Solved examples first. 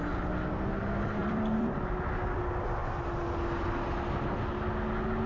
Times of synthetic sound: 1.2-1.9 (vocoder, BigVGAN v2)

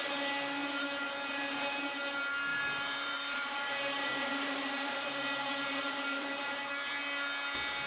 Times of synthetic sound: 0.6-1.8 (vocoder, BigVGAN v2); 2.5-6.6

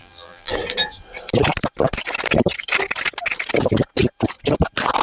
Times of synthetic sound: 0.0-0.5 (vocoder, BigVGAN v2)

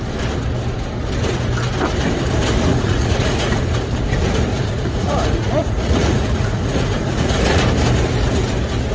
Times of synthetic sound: 2.7-3.6 (vocoder, Vocos); 4.5-7.7

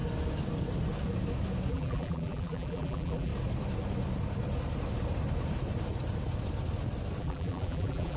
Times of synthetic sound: 1.7-3.3 (vocoder, BigVGAN v2); 7.2-8.2

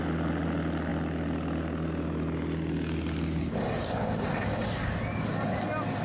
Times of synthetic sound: none